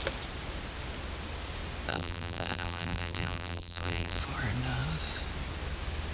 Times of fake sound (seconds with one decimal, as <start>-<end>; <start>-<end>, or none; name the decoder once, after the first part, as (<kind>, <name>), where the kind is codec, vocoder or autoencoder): 1.9-4.2 (vocoder, BigVGAN v2)